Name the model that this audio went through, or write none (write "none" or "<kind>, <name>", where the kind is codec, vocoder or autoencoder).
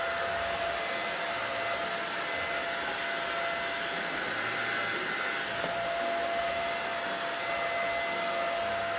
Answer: none